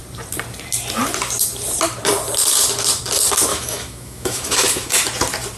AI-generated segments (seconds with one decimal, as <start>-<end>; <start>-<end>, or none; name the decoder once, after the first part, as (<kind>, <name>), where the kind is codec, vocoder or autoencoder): 3.5-5.0 (autoencoder, DAC-VAE)